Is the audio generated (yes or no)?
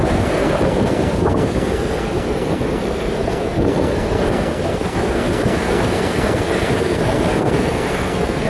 yes